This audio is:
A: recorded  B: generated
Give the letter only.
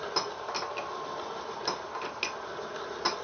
A